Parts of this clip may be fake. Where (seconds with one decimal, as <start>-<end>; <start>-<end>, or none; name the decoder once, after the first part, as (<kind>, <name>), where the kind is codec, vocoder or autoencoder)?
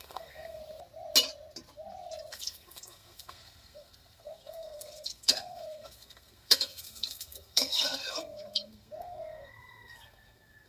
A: 0.0-0.6 (codec, SNAC); 2.3-10.7